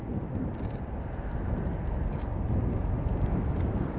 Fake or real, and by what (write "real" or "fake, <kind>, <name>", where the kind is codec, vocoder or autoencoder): real